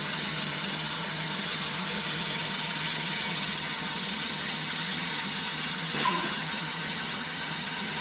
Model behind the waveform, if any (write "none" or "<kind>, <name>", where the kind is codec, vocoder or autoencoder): vocoder, HiFi-GAN